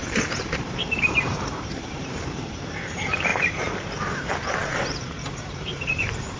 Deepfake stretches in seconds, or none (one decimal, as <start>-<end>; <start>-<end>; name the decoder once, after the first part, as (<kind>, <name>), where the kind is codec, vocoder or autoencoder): 0.0-6.4 (vocoder, BigVGAN v2)